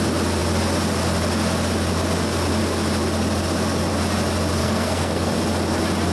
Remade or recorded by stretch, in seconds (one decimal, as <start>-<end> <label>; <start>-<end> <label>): 0.0-4.6 recorded; 4.6-5.3 remade; 5.3-6.1 recorded